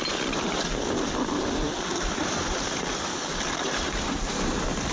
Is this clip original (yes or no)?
no